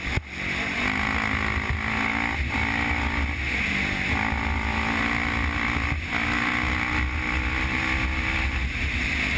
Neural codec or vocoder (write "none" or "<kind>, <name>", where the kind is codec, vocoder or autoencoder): none